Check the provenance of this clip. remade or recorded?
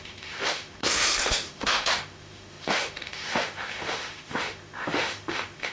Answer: remade